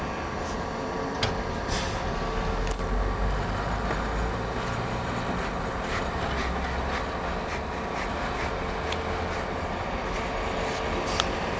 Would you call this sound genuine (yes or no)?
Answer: yes